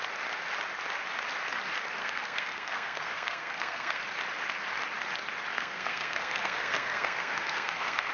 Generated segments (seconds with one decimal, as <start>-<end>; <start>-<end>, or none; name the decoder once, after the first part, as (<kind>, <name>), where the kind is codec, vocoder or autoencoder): 2.0-4.0 (codec, SNAC); 5.5-8.1